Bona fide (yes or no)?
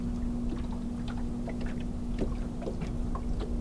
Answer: yes